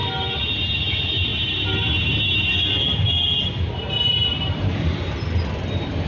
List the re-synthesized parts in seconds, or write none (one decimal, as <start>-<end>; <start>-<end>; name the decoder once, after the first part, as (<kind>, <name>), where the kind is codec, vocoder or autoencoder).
0.0-0.8 (vocoder, BigVGAN v2)